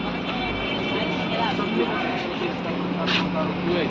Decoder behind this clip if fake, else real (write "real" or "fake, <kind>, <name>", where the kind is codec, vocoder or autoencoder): real